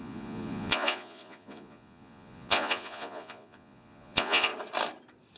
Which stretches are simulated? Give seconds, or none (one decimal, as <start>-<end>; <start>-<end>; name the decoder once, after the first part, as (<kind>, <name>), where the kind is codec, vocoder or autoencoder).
0.0-4.5 (vocoder, Vocos)